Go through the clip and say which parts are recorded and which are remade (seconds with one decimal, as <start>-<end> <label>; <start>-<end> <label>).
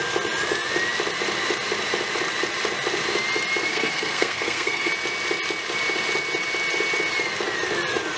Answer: 0.0-3.7 recorded; 3.7-4.9 remade; 4.9-8.2 recorded